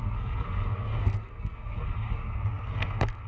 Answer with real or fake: fake